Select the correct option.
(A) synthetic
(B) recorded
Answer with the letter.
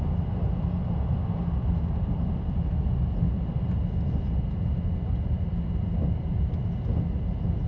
B